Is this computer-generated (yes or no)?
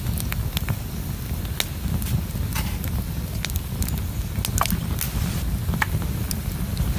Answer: no